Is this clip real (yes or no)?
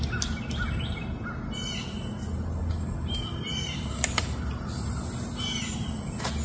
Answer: yes